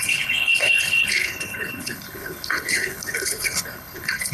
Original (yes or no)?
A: no